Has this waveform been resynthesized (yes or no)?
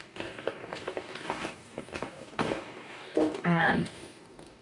yes